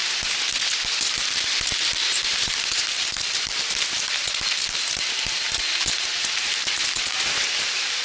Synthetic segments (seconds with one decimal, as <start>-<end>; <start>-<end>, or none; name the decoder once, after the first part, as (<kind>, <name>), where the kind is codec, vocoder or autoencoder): 1.0-8.0 (vocoder, BigVGAN v2)

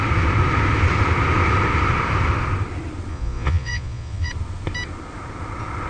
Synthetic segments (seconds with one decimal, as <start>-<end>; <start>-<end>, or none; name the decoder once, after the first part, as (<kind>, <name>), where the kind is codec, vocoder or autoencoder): 3.1-4.3 (vocoder, Vocos)

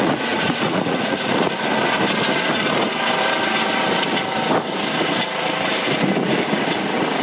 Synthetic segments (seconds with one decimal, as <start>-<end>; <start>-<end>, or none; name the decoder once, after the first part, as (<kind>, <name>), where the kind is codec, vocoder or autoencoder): 0.0-1.5 (vocoder, Vocos)

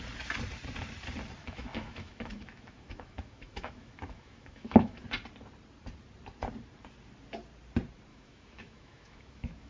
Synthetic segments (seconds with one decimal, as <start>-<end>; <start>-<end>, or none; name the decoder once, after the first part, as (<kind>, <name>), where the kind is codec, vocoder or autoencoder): 1.4-5.0 (autoencoder, DAC-VAE); 8.1-9.7

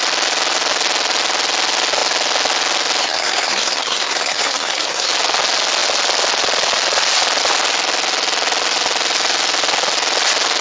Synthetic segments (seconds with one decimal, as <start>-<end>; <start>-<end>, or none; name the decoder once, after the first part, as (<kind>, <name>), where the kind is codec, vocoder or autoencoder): 3.0-5.1 (codec, SNAC)

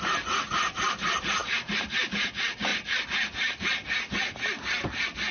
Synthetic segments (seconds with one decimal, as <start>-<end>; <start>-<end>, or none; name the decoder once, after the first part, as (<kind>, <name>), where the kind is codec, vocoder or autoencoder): none

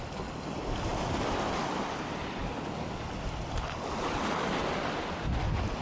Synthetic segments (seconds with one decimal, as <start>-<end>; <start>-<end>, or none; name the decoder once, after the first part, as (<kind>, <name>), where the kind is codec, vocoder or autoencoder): none